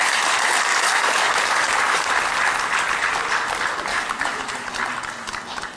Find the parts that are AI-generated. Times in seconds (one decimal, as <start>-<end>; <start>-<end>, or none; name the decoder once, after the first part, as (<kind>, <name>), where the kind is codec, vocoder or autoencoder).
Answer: 0.7-2.1 (codec, DAC); 3.9-4.5